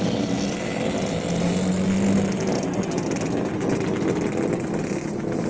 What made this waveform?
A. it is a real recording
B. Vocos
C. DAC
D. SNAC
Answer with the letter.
A